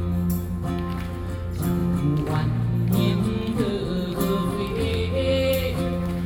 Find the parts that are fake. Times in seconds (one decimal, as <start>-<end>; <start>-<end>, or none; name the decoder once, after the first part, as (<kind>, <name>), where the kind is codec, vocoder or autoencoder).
4.9-6.3 (autoencoder, DAC-VAE)